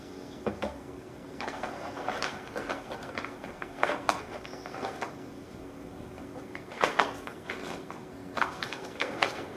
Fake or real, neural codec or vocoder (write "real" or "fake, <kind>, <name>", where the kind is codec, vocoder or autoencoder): fake, codec, SNAC